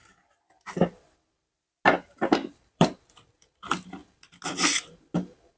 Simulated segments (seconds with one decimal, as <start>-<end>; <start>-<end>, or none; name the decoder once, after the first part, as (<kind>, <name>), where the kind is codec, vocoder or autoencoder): 2.1-4.0 (vocoder, BigVGAN v2)